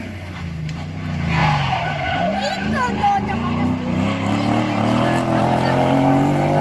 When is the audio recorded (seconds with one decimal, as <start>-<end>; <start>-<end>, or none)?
0.0-6.6